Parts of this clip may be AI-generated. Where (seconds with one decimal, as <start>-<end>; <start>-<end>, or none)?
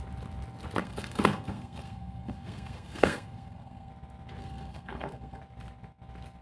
0.8-3.9; 4.4-5.4